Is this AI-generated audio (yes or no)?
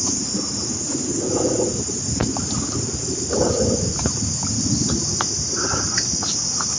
no